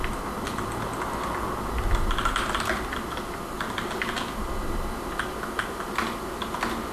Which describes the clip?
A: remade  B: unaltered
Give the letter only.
B